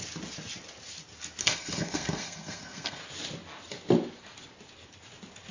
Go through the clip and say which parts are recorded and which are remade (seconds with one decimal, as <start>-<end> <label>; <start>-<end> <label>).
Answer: 0.0-1.4 recorded; 1.4-3.0 remade; 3.0-5.5 recorded